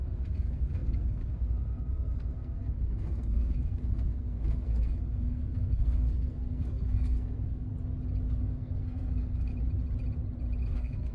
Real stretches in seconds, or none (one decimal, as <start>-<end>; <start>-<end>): 7.7-8.4; 9.5-10.7